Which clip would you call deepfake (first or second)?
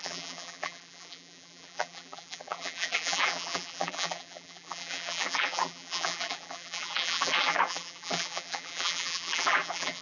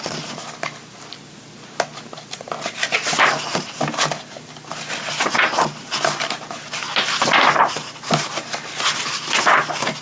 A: first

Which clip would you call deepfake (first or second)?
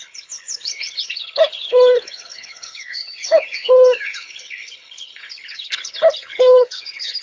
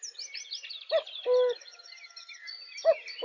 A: first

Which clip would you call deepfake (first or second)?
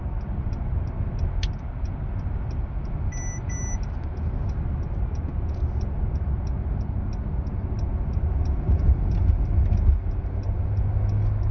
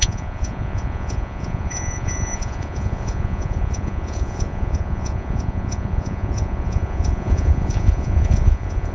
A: second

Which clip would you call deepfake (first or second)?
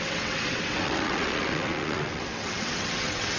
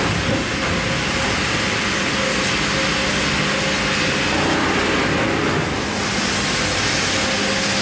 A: first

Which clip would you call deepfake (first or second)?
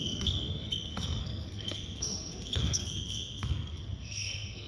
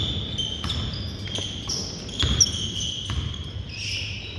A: first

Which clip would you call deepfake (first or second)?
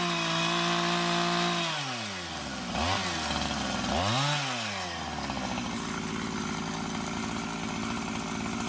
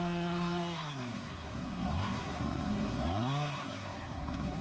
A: second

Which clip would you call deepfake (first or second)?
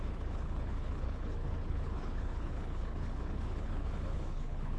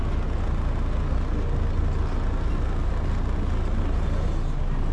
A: first